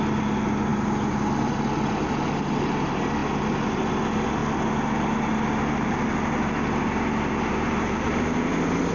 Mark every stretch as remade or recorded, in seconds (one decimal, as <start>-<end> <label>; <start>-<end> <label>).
0.0-8.9 recorded